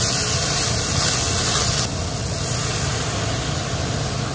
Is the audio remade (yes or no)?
no